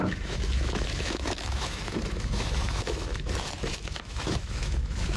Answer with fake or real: fake